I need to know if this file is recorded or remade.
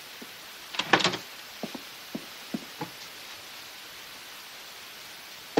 recorded